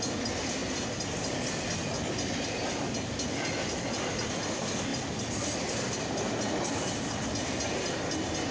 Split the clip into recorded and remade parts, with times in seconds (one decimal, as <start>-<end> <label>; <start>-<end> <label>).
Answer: 0.0-8.5 recorded